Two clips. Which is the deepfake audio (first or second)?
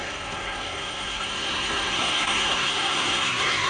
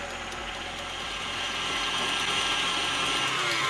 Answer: first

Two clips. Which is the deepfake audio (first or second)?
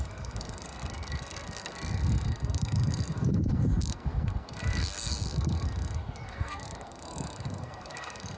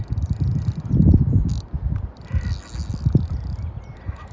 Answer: first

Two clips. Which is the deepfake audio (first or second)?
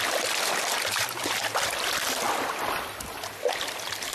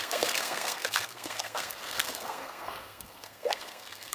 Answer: second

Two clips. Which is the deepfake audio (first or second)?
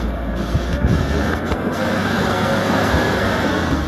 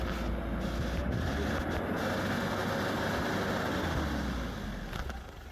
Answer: first